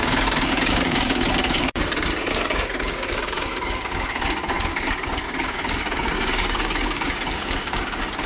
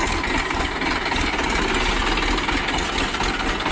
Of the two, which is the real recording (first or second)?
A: second